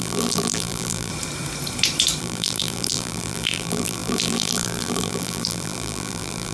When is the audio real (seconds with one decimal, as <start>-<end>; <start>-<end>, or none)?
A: 1.1-2.2